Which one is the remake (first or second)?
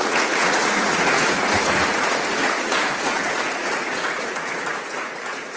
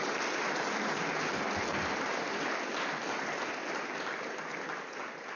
first